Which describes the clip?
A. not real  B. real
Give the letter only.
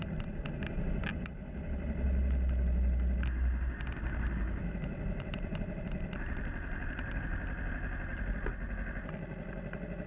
B